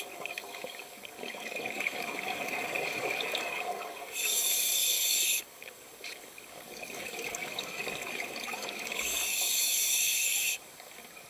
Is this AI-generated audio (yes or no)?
yes